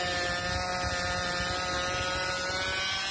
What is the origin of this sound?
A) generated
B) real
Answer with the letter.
B